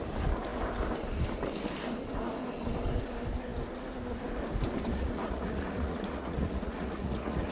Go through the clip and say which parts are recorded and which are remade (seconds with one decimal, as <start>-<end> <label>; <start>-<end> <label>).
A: 0.0-4.9 recorded; 4.9-7.5 remade